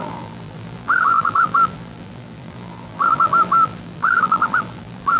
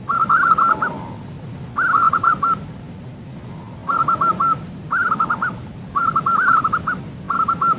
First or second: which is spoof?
first